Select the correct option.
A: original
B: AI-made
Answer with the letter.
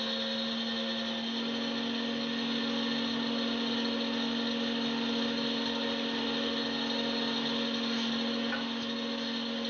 A